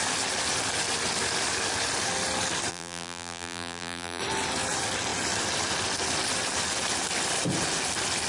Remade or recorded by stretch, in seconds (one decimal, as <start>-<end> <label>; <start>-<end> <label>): 0.0-2.7 recorded; 2.7-4.2 remade; 4.2-8.3 recorded